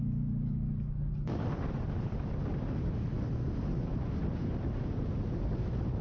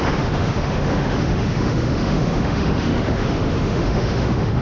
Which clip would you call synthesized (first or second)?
second